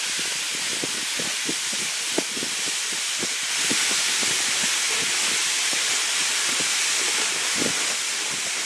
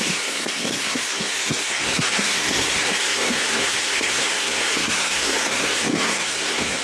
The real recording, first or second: first